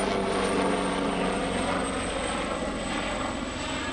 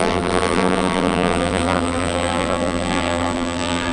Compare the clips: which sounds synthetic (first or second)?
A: second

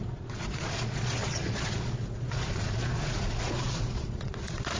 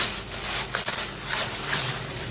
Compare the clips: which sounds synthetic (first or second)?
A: first